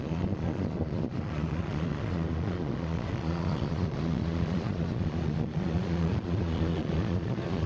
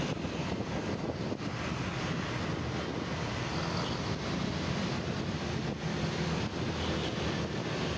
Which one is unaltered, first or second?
second